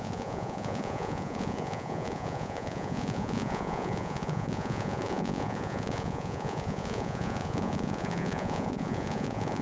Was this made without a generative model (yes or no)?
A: no